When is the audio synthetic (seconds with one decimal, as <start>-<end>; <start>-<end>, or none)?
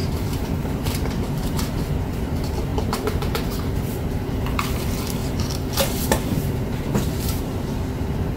0.0-1.9; 2.7-3.7; 5.2-7.4